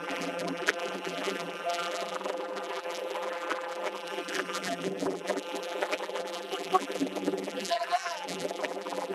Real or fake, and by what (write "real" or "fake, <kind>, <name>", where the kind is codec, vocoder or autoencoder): fake, vocoder, BigVGAN v2